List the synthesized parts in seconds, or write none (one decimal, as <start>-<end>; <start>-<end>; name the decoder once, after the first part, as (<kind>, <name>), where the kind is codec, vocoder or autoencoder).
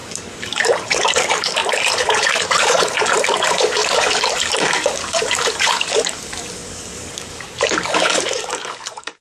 0.0-9.2 (codec, DAC)